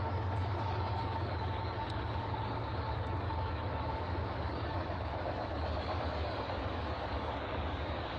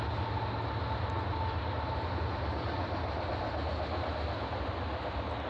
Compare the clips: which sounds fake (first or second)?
first